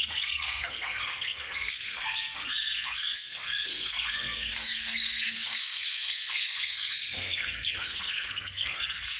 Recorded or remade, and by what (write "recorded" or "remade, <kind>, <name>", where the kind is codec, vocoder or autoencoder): remade, codec, SNAC